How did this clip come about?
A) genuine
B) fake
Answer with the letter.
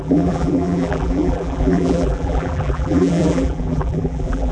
B